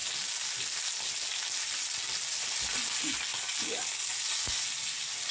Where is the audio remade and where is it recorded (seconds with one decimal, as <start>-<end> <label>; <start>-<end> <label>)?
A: 0.0-5.3 recorded